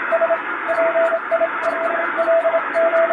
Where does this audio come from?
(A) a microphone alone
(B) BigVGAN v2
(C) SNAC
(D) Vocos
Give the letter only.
A